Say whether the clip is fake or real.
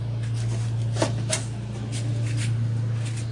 real